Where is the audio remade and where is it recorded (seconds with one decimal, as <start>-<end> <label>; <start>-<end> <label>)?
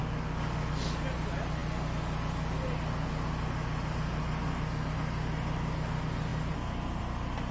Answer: 0.0-0.7 remade; 0.7-7.5 recorded